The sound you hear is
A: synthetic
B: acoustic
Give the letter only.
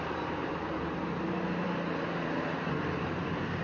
A